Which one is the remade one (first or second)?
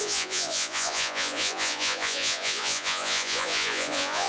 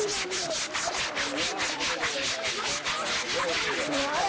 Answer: first